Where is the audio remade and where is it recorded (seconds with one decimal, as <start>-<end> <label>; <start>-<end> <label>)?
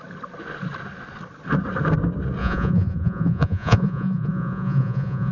0.0-2.4 recorded; 2.4-5.3 remade